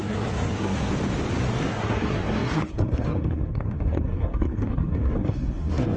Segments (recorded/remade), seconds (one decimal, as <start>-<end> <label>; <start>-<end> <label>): 0.0-0.9 remade; 0.9-1.4 recorded; 1.4-6.0 remade